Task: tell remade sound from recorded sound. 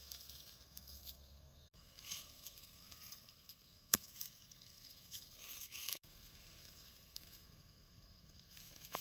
remade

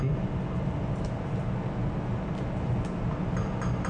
recorded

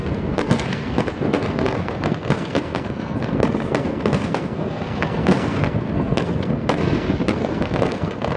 remade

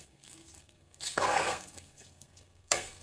remade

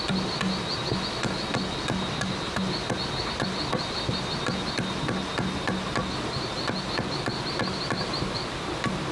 recorded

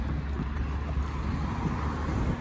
recorded